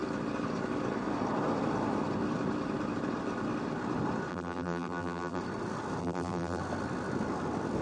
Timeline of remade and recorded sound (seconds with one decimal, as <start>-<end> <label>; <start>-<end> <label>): 0.0-4.3 recorded; 4.3-5.4 remade; 5.4-6.0 recorded; 6.0-6.6 remade; 6.6-7.8 recorded